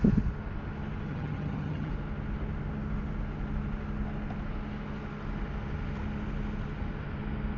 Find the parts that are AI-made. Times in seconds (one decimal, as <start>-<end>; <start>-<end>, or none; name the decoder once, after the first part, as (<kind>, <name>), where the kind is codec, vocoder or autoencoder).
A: 1.1-1.9 (vocoder, HiFi-GAN)